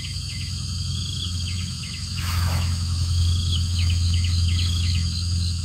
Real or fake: fake